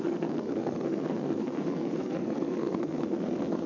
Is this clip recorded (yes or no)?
no